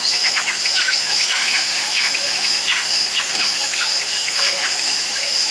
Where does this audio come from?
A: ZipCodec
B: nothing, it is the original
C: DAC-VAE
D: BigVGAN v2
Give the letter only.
C